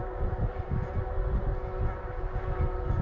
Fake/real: real